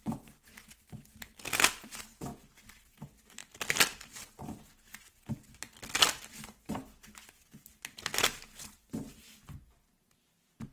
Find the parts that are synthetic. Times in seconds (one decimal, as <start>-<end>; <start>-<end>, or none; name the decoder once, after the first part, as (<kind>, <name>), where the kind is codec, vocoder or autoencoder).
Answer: none